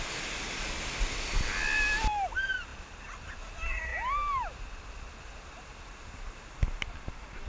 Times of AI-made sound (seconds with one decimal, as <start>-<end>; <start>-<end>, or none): none